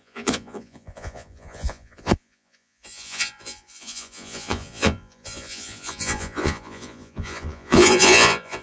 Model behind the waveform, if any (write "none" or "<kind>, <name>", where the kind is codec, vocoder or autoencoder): vocoder, Vocos